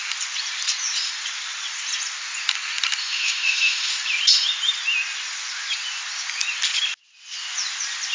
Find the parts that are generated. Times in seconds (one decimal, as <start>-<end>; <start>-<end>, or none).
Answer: 3.0-3.9